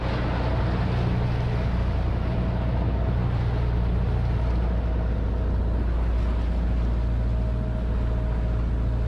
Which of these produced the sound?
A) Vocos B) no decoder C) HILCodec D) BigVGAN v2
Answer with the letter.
B